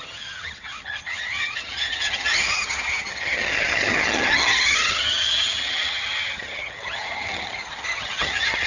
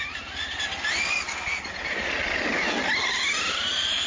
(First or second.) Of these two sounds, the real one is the second